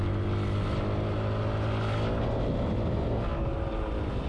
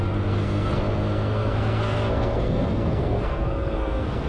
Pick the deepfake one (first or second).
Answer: second